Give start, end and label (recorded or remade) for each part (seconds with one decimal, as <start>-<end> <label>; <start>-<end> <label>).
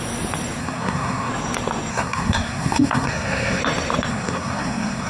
0.0-0.6 recorded; 0.6-1.3 remade; 1.3-1.9 recorded; 1.9-3.6 remade; 3.6-4.1 recorded; 4.1-5.1 remade